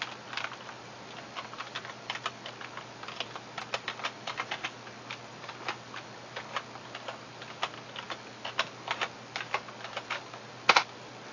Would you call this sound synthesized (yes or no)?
no